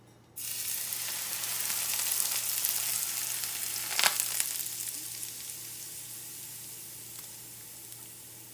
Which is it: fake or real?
real